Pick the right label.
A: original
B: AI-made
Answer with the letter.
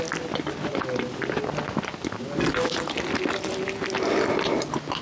A